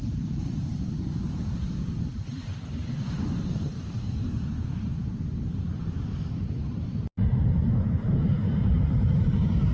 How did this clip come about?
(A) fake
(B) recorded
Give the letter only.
A